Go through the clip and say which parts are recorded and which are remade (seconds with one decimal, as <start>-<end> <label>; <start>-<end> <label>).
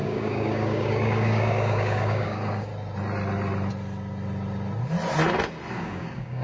0.0-2.7 remade; 2.7-5.7 recorded; 5.7-6.4 remade